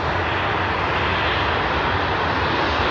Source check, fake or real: real